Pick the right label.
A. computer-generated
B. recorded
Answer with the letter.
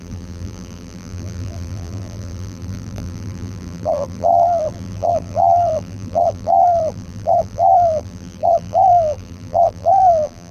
A